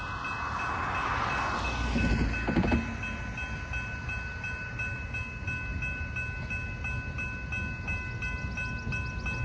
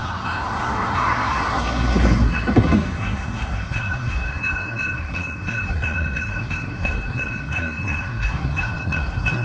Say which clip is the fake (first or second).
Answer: second